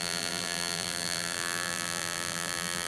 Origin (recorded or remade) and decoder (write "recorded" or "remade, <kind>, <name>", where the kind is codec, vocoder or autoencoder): remade, vocoder, BigVGAN v2